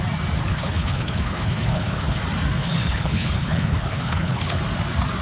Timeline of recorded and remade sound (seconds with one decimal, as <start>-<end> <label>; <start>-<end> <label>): 0.0-0.5 recorded; 0.5-2.2 remade; 2.2-2.6 recorded; 2.6-4.6 remade; 4.6-5.2 recorded